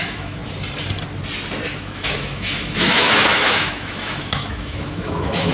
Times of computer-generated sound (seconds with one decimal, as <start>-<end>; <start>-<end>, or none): 0.0-0.4; 1.7-5.5